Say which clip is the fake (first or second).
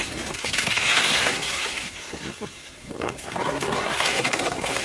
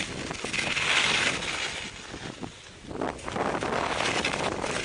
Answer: first